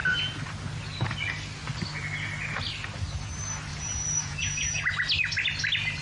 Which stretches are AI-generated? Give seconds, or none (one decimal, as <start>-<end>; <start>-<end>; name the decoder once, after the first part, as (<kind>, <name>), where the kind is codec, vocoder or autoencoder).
3.7-4.8 (vocoder, Vocos)